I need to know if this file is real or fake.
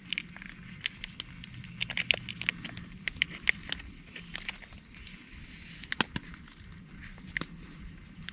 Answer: real